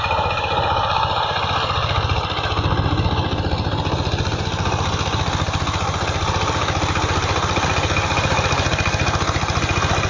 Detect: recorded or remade recorded